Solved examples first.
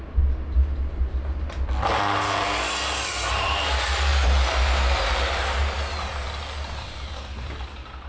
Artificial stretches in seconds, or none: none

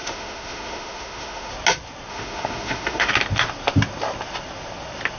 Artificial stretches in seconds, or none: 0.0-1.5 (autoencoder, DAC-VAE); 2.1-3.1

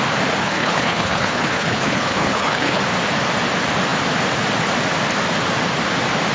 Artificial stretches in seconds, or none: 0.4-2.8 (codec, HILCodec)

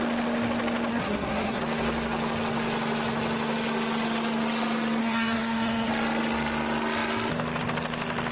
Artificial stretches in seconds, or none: 0.9-1.6 (codec, SNAC); 5.0-5.9